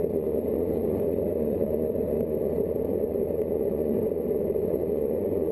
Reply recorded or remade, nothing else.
remade